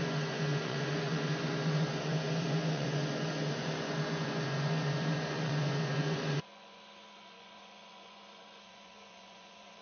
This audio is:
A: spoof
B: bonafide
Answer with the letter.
A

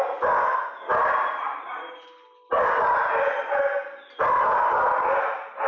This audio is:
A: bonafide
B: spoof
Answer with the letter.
A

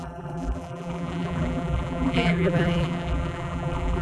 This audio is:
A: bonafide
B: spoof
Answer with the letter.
B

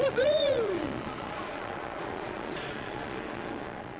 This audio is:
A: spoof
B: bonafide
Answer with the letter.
A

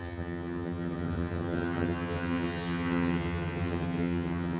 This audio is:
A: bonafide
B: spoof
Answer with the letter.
B